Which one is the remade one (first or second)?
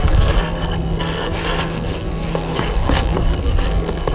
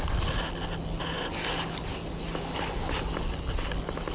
first